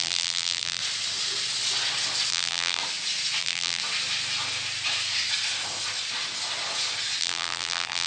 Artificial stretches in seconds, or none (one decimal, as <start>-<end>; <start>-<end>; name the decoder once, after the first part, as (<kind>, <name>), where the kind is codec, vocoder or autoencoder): 0.0-0.8 (vocoder, BigVGAN v2); 2.3-2.8; 3.4-3.8; 7.2-8.1